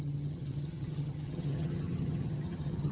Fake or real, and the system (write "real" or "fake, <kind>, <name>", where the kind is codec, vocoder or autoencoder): fake, vocoder, HiFi-GAN